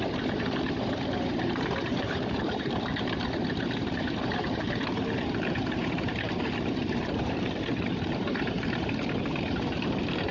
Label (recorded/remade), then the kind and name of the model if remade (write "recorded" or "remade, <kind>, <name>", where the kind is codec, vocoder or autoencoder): remade, vocoder, BigVGAN v2